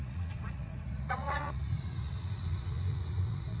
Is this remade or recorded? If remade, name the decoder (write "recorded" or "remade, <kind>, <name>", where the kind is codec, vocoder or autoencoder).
remade, vocoder, Vocos